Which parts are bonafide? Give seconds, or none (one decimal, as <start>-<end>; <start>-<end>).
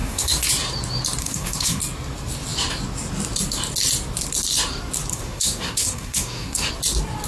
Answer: 0.5-1.2; 1.8-5.1; 6.7-7.3